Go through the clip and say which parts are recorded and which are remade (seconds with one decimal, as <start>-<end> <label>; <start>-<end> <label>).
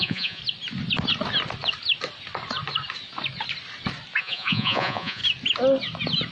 0.0-0.4 remade; 0.4-4.2 recorded; 4.2-5.2 remade; 5.2-6.3 recorded